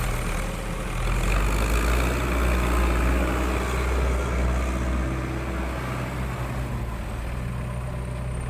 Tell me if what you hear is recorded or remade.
recorded